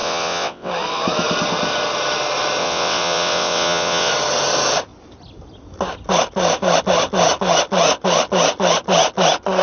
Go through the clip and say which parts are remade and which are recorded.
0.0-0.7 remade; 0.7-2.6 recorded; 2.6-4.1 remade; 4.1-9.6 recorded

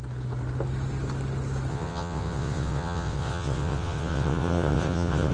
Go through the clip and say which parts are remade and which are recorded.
0.0-1.7 recorded; 1.7-5.3 remade

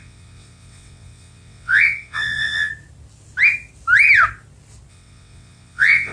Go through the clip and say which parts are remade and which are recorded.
0.0-2.7 remade; 2.7-4.9 recorded; 4.9-6.1 remade

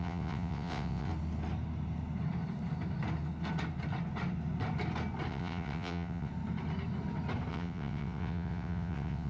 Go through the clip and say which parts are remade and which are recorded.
0.0-1.1 remade; 1.1-5.3 recorded; 5.3-6.3 remade; 6.3-7.5 recorded; 7.5-9.3 remade